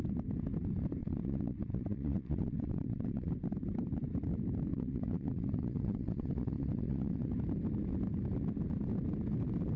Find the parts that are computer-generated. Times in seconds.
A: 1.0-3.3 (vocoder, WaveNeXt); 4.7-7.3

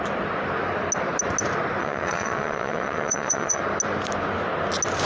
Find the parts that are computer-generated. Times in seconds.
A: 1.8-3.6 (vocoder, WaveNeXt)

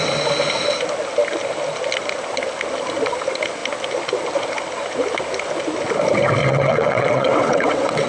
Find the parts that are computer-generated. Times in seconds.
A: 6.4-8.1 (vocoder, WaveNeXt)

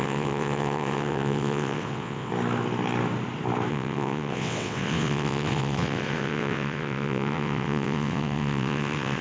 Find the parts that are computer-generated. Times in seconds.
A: 0.0-2.3 (vocoder, WaveNeXt); 3.7-9.2

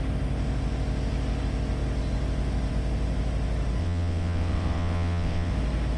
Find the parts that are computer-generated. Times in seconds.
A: 3.8-5.5 (vocoder, WaveNeXt)